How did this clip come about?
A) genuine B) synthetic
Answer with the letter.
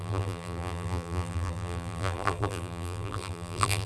B